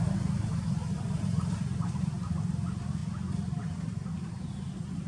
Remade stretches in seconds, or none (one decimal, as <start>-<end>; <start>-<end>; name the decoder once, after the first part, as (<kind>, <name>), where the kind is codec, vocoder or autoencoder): none